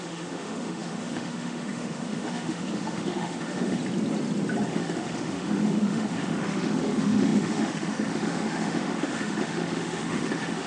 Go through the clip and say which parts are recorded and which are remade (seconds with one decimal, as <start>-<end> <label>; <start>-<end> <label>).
0.0-3.8 remade; 3.8-4.7 recorded; 4.7-10.7 remade